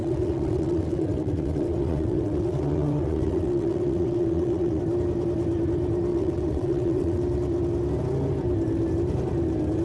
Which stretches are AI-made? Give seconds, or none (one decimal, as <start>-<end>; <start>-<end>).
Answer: 0.0-4.8; 6.1-7.2